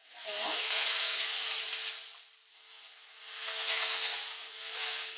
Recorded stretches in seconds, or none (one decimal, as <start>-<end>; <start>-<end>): 1.6-2.5